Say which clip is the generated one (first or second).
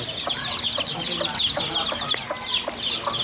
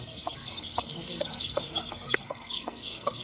second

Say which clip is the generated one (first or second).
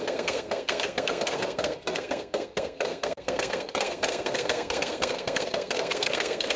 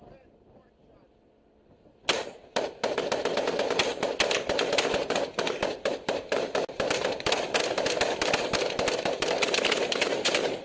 first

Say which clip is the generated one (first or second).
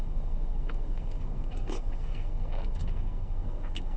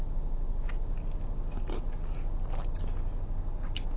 first